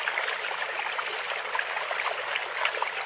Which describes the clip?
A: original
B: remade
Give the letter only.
A